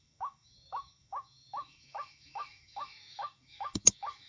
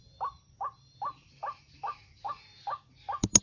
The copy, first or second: first